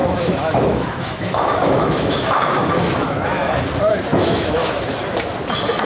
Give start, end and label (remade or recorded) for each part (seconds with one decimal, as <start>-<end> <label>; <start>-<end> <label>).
0.0-3.5 remade; 3.5-4.1 recorded; 4.1-4.9 remade; 4.9-5.8 recorded